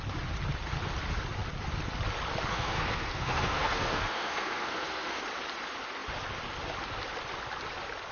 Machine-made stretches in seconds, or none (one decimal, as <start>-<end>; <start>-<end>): 2.5-5.2